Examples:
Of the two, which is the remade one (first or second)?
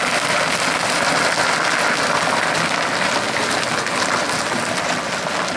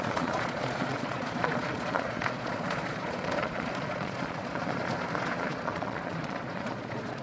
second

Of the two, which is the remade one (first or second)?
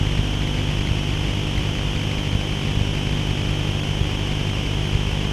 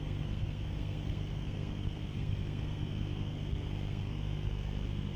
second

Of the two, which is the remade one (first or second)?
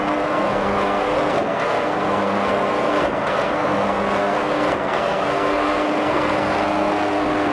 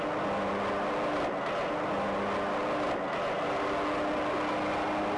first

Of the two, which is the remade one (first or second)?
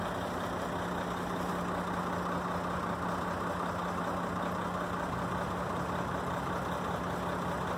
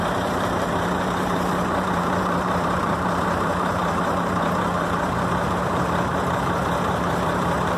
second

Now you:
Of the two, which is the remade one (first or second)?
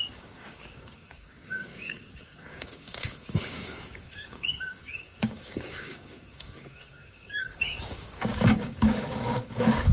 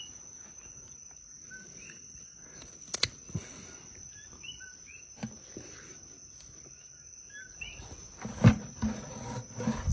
first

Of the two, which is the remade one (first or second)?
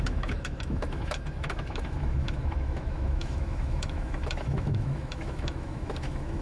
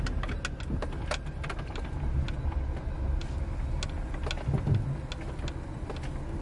first